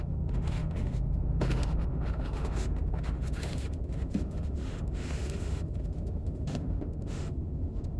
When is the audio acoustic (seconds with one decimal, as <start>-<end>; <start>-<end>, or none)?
none